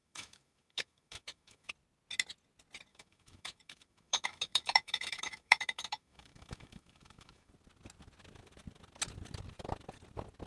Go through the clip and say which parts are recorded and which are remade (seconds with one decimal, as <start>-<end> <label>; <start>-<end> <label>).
0.0-1.7 remade; 1.7-2.9 recorded; 2.9-7.5 remade; 7.5-10.5 recorded